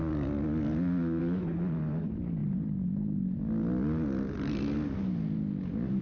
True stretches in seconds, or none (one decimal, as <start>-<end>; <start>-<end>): 0.0-6.0